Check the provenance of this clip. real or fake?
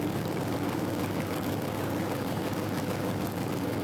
fake